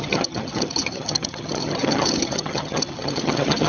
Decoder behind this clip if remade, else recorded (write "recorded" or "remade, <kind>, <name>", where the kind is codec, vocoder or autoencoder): remade, vocoder, HiFi-GAN